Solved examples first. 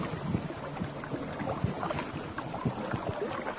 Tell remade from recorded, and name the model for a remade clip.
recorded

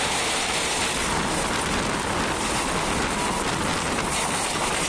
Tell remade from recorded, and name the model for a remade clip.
remade, vocoder, BigVGAN v2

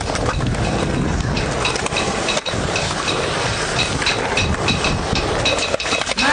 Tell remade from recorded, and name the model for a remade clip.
recorded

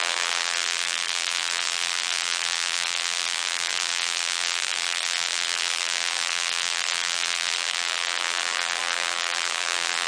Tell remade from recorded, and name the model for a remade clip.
remade, vocoder, BigVGAN v2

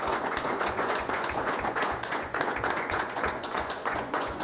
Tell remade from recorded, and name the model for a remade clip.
remade, vocoder, Vocos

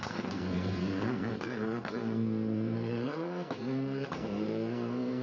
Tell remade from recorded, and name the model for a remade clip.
remade, codec, SNAC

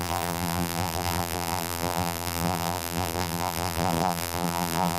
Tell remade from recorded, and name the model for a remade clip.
remade, vocoder, BigVGAN v2